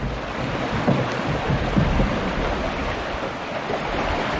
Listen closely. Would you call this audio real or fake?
real